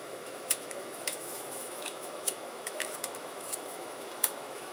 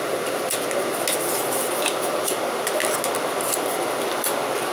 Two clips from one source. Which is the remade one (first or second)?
first